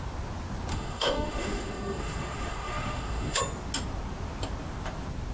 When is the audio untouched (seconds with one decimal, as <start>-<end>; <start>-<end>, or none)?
0.0-0.7; 3.4-5.3